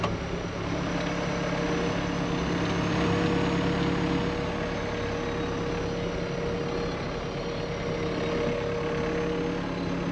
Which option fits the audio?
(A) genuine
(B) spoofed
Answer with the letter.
A